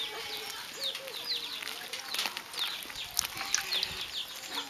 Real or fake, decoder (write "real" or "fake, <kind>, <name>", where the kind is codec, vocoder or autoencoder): real